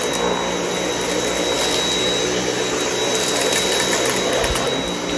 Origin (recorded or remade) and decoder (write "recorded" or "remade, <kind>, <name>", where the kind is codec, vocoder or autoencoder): recorded